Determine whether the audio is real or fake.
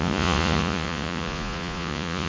fake